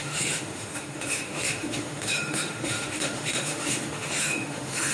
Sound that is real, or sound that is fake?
fake